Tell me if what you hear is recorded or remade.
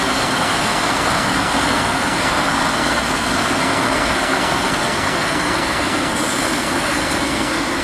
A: remade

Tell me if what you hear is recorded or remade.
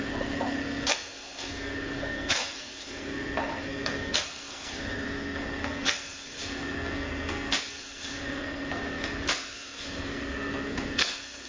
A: remade